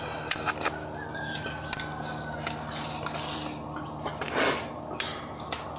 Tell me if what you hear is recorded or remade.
recorded